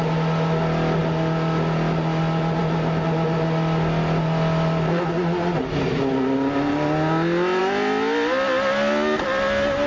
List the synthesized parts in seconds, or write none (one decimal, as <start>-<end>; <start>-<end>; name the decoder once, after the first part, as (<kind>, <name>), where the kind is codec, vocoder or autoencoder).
none